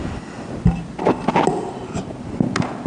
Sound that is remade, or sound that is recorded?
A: recorded